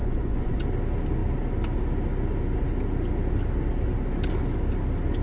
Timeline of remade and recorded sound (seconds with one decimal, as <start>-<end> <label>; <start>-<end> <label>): 0.0-0.6 remade; 0.6-5.2 recorded